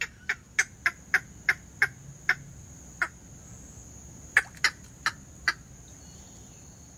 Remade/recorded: recorded